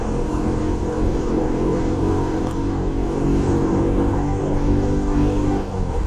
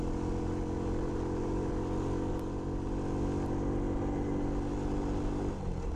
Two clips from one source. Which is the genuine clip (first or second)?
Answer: second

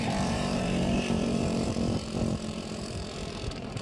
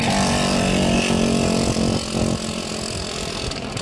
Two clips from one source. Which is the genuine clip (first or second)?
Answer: second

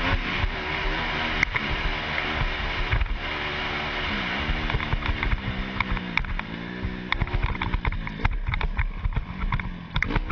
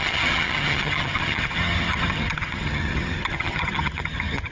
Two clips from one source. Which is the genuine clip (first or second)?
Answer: first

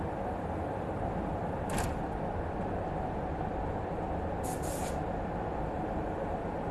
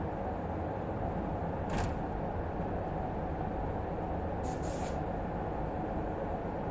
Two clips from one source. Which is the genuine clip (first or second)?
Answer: second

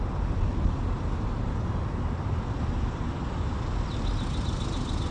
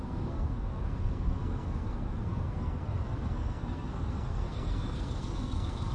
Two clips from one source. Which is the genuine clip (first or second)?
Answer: first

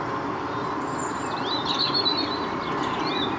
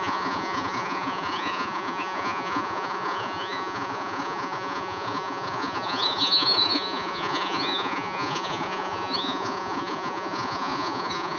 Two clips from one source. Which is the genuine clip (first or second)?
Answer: first